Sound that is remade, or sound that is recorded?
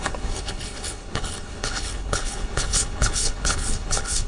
remade